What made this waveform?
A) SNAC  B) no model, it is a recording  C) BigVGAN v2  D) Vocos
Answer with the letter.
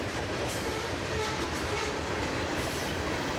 C